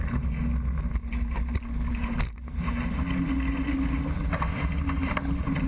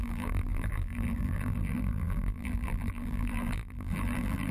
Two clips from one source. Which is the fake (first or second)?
second